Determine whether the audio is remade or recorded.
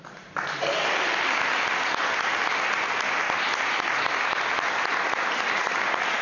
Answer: recorded